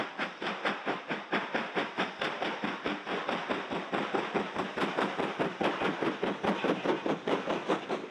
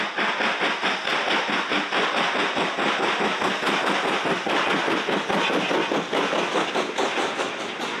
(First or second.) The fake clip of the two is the first